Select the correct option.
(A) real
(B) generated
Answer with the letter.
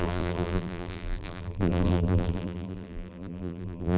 B